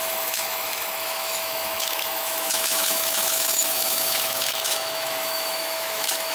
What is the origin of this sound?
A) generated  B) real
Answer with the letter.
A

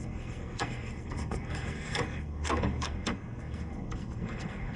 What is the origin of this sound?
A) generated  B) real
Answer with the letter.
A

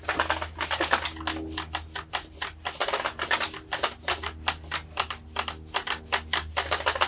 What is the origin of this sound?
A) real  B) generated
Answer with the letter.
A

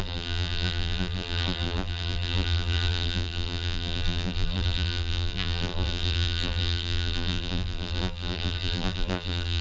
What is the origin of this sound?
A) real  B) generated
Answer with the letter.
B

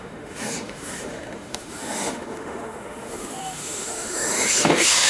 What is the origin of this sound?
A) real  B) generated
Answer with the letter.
B